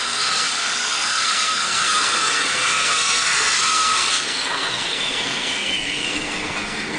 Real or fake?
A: fake